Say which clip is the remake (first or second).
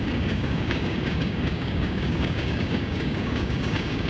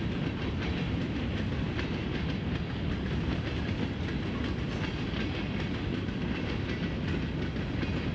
first